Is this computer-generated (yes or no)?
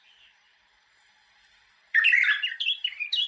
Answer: yes